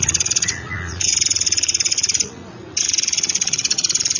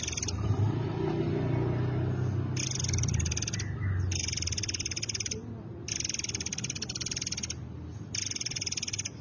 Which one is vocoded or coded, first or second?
first